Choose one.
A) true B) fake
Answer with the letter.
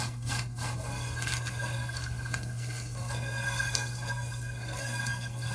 B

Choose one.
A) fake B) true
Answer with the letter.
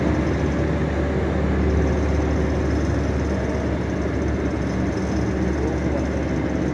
B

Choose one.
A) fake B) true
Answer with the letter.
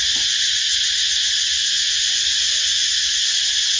B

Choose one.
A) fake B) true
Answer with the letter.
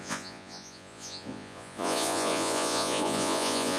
A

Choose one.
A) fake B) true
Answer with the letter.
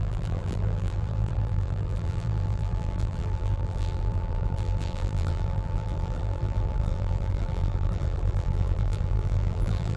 A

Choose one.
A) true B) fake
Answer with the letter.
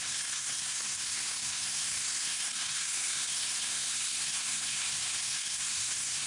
B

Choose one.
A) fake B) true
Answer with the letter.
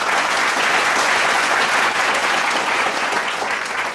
A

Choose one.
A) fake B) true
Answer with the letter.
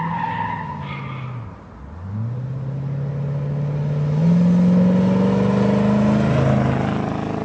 B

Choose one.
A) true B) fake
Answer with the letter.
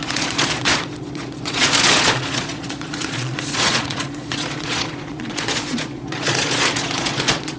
B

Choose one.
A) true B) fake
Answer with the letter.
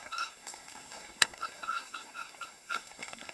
B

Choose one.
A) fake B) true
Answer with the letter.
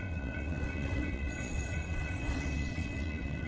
A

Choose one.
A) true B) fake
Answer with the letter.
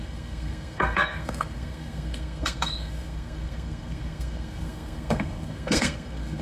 B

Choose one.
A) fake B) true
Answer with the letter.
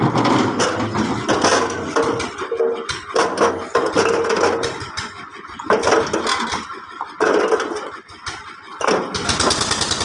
B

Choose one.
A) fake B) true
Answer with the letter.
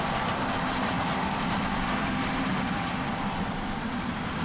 A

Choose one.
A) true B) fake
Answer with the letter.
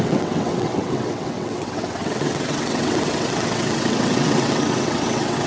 B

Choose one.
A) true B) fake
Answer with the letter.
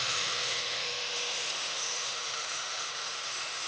B